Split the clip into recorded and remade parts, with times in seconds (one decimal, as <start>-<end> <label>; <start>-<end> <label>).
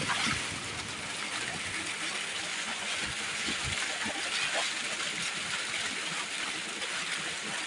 0.0-2.5 recorded; 2.5-3.6 remade; 3.6-7.7 recorded